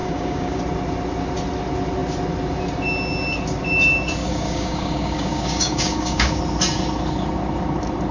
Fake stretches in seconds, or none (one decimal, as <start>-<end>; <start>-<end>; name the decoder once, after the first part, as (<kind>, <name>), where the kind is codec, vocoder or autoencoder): 0.0-0.6 (codec, DAC); 4.2-6.4